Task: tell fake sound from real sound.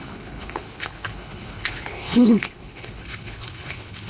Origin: fake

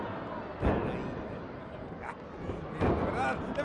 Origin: real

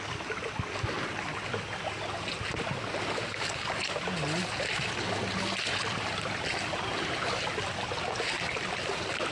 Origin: real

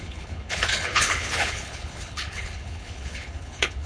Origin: fake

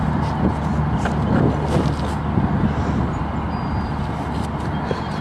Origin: real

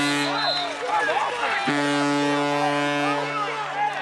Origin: real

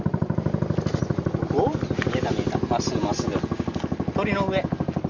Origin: real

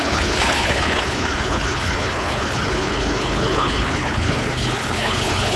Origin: fake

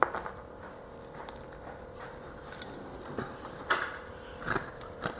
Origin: real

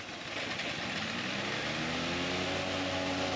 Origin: real